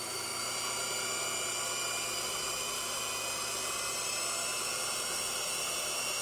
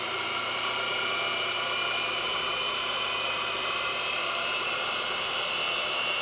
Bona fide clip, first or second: first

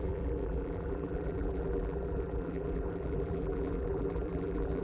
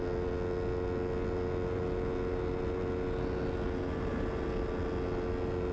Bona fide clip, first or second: second